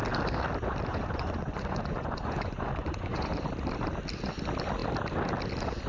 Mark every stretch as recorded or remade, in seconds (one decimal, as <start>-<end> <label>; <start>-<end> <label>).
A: 0.0-0.9 recorded; 0.9-3.3 remade; 3.3-5.9 recorded